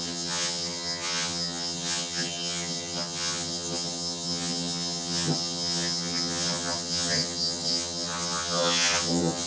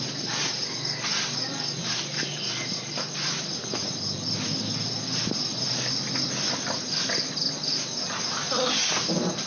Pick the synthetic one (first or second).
first